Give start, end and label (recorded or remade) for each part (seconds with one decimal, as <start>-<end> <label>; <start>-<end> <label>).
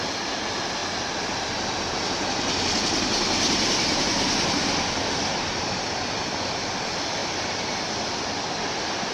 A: 0.0-9.1 recorded